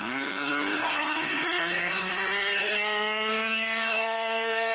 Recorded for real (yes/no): no